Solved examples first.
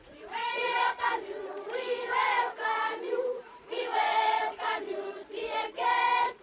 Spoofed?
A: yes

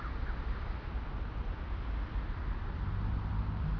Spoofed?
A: no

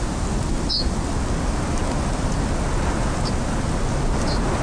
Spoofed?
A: no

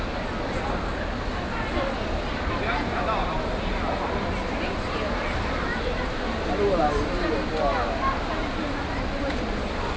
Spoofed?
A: no